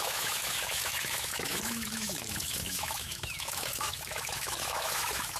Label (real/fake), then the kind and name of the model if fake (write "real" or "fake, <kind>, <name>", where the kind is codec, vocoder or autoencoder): fake, autoencoder, DAC-VAE